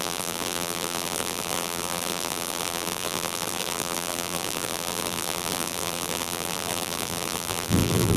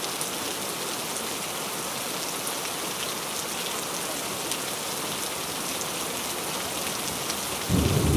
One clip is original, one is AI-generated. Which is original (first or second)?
second